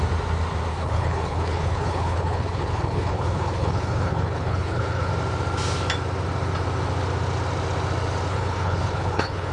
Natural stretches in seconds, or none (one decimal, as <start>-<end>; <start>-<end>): 0.0-0.7; 5.1-8.3